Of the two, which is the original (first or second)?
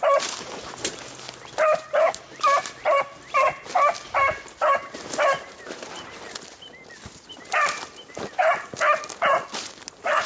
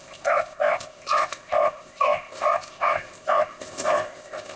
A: first